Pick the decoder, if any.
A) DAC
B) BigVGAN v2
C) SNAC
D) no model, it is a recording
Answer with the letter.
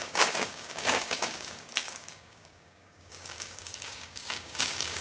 A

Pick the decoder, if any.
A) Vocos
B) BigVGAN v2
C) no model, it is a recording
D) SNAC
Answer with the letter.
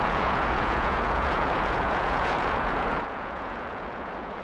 A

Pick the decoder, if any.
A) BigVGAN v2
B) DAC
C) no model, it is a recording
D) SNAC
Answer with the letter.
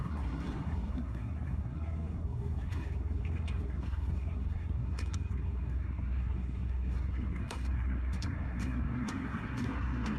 D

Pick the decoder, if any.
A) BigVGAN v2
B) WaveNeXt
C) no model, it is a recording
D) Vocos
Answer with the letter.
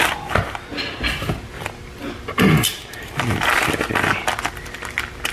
C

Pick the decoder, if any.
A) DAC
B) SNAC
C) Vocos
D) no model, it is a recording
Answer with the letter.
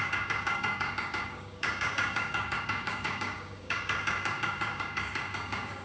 A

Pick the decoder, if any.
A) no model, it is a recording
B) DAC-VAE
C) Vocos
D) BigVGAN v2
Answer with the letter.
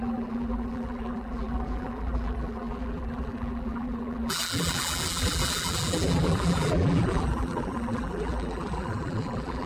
D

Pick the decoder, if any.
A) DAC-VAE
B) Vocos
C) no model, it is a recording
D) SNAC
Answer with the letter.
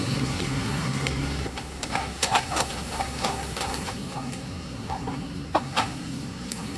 D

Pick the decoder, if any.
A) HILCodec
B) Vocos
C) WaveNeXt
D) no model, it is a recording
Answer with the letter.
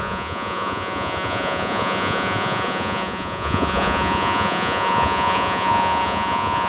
B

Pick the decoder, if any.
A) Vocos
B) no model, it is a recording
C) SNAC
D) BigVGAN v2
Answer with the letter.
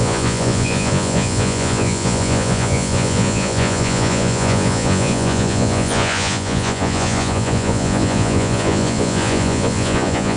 A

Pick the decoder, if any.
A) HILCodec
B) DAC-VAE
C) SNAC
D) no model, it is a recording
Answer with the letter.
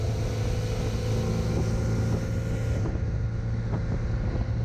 D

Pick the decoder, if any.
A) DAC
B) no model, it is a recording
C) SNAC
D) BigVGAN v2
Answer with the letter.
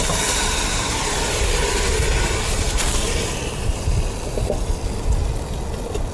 B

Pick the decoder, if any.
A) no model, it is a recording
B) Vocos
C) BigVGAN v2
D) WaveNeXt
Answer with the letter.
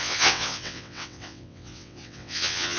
D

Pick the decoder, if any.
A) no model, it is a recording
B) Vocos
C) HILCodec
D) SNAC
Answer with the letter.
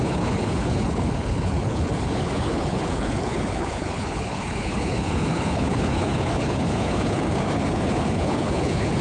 C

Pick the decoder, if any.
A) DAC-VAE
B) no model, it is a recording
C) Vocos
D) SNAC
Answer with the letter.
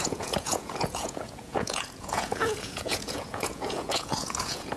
C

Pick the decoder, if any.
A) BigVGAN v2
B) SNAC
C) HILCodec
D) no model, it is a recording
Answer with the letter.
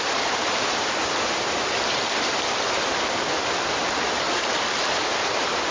A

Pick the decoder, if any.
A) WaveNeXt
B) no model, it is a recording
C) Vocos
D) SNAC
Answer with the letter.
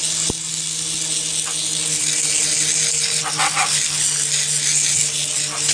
B